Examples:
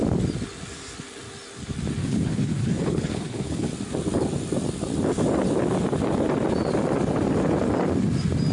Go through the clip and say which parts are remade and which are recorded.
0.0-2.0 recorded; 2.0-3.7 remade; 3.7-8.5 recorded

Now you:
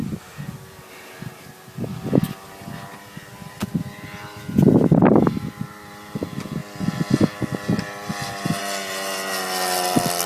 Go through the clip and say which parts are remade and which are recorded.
0.0-10.3 recorded

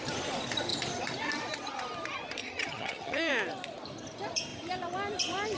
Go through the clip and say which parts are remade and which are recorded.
0.0-2.4 recorded; 2.4-3.3 remade; 3.3-5.6 recorded

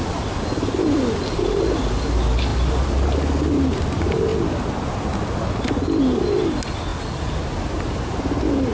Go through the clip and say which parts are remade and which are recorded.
0.0-8.7 recorded

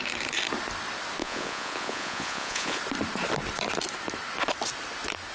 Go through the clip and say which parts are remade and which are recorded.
0.0-1.2 recorded; 1.2-2.8 remade; 2.8-5.3 recorded

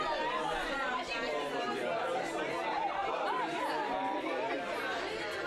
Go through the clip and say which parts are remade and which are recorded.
0.0-3.0 recorded; 3.0-3.6 remade; 3.6-5.5 recorded